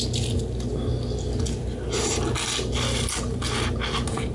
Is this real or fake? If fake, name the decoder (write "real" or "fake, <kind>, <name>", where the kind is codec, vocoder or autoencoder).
real